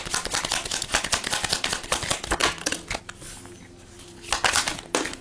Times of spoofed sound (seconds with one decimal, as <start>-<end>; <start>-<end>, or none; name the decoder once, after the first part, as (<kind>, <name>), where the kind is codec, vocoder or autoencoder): none